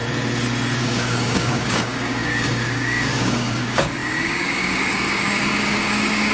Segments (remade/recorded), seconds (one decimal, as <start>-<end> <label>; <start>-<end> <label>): 0.0-0.8 recorded; 0.8-6.3 remade